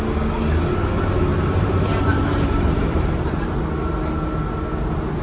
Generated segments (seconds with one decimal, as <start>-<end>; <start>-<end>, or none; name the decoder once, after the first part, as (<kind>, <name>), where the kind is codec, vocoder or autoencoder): 1.3-3.5 (vocoder, BigVGAN v2)